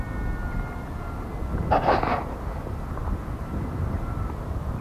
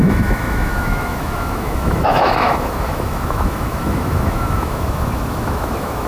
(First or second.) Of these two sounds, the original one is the first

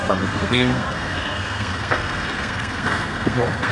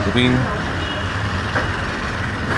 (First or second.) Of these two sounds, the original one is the second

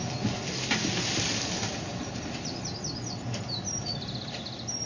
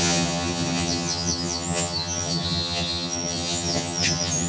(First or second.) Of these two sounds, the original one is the first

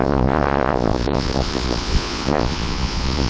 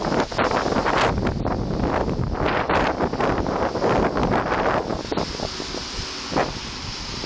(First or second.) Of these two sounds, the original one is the second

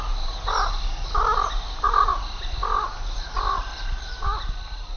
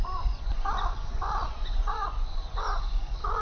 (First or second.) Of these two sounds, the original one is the first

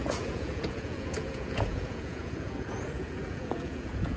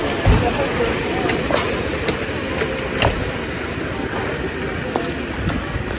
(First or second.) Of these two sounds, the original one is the second